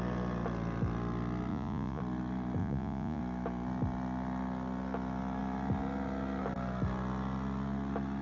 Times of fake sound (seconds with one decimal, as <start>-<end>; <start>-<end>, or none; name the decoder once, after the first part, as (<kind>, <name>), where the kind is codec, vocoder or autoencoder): 1.5-2.0 (vocoder, Vocos); 2.6-3.2